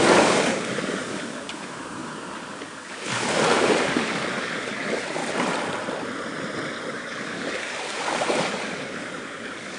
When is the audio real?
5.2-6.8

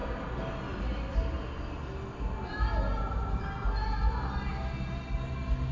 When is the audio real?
0.0-5.7

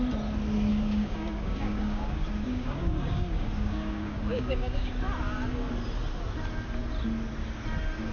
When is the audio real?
0.0-0.7; 4.9-8.1

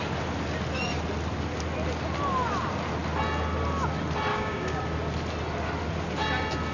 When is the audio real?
0.0-4.3; 4.8-6.7

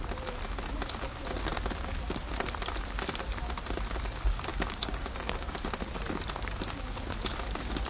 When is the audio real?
0.0-4.5; 5.5-7.9

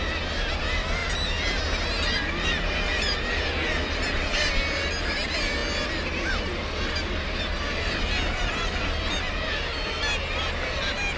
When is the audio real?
0.0-11.2

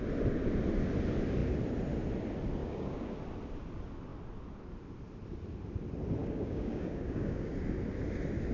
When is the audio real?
0.0-2.6; 3.1-6.2; 7.5-8.5